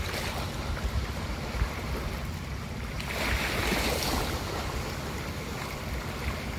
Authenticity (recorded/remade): recorded